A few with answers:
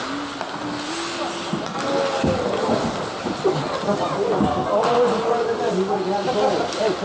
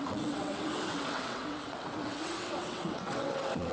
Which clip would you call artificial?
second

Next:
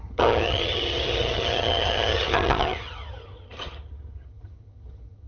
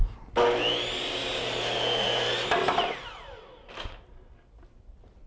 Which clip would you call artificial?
first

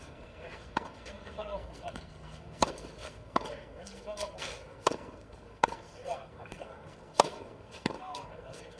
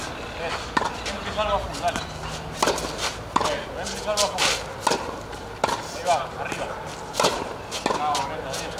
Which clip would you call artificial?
first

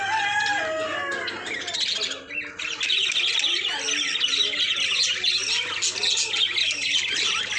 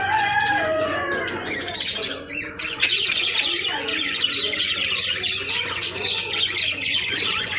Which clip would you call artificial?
second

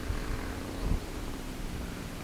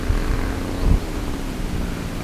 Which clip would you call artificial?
first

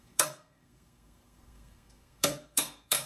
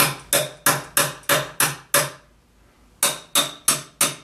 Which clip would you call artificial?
first